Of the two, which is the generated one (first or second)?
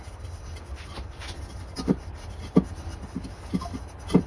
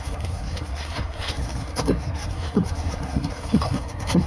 second